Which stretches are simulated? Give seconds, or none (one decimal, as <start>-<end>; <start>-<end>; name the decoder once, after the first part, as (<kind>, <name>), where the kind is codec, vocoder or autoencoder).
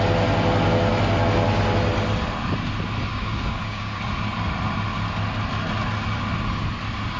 3.1-4.0 (codec, DAC)